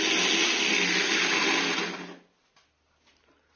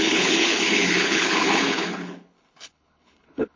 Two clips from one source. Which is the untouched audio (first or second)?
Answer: first